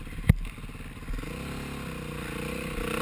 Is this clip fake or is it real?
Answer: real